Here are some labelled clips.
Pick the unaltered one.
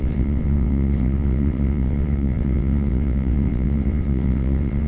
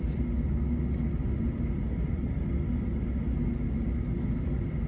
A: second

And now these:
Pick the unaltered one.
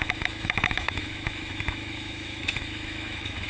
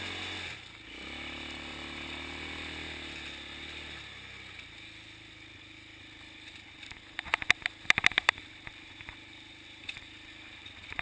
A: second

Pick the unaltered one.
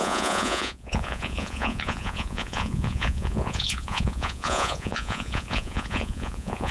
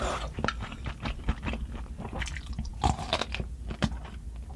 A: second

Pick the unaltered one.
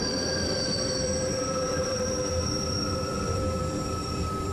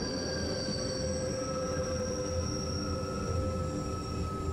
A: second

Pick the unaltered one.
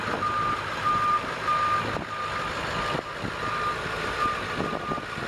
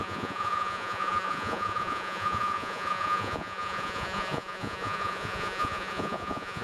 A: first